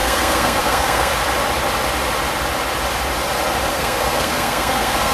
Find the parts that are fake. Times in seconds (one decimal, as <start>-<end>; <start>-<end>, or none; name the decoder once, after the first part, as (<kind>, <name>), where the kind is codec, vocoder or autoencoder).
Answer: 0.0-1.1 (codec, SNAC); 3.7-5.1

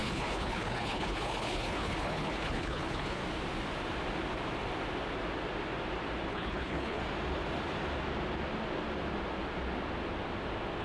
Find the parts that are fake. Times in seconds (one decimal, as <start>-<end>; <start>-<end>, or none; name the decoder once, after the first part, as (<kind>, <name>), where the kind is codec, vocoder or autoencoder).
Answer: 0.0-3.2 (codec, HILCodec); 6.3-7.0

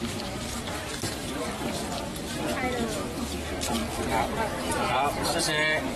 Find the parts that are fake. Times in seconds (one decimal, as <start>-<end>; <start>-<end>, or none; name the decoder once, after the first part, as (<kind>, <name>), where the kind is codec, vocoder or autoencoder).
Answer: 0.9-1.4 (vocoder, BigVGAN v2); 3.8-5.4

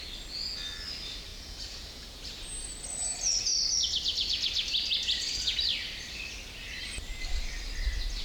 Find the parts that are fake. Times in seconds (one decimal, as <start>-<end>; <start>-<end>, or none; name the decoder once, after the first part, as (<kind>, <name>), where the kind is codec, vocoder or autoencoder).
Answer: 1.3-2.2 (vocoder, Vocos)

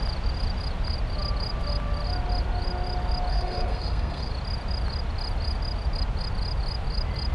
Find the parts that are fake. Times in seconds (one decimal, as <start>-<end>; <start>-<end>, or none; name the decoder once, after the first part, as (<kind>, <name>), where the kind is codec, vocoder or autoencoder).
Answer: 3.3-4.3 (codec, SNAC)